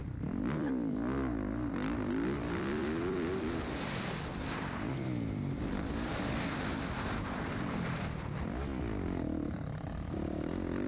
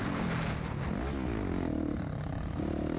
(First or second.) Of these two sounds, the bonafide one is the second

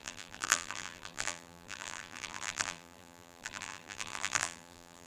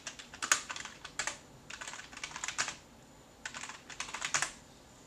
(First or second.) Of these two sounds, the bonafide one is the second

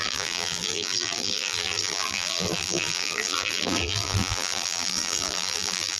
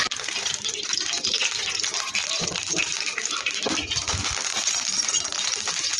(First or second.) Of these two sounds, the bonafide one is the second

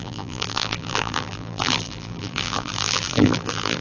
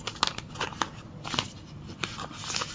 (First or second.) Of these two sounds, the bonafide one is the second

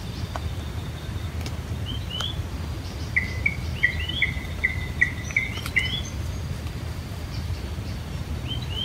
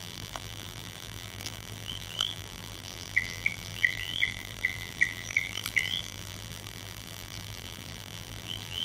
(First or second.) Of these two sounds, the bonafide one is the first